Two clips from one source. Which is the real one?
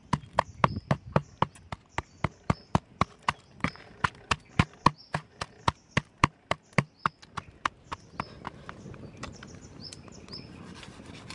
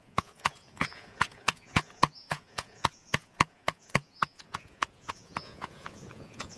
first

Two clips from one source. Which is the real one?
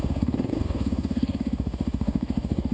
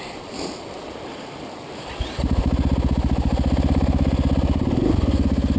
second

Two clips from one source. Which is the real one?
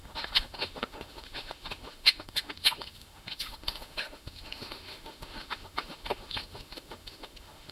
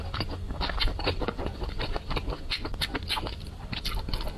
second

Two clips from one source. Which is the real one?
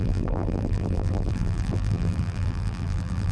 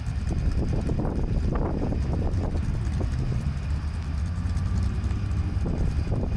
second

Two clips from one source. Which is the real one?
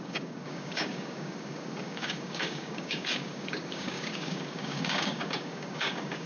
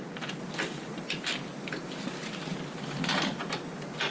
second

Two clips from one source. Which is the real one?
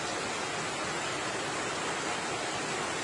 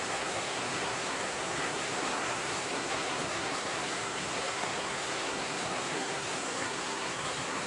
first